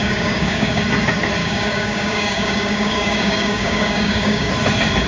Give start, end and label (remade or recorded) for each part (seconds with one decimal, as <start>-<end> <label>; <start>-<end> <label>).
0.0-0.8 remade; 0.8-1.4 recorded; 1.4-4.5 remade; 4.5-5.1 recorded